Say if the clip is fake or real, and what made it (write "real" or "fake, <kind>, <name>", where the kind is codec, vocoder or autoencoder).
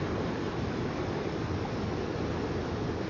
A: real